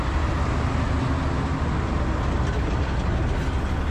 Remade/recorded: recorded